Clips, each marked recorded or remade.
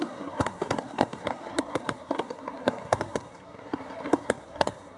remade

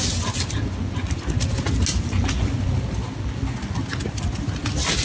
recorded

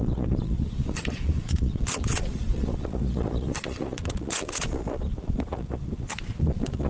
remade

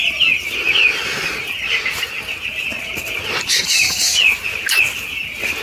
recorded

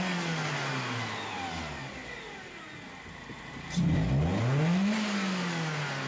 recorded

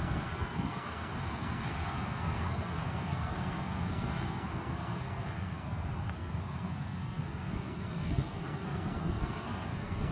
remade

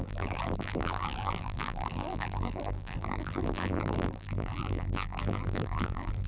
remade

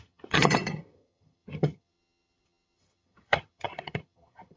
remade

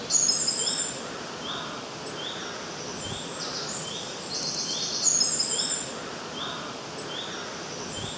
recorded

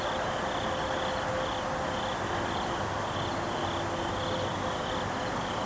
recorded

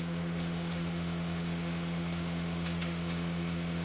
remade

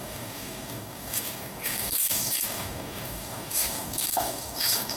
remade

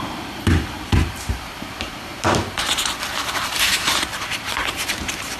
remade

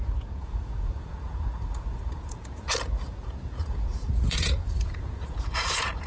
remade